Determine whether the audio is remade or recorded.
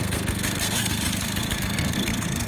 remade